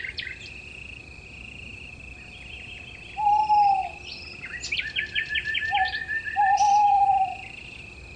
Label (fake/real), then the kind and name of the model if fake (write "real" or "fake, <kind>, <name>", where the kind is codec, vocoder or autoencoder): real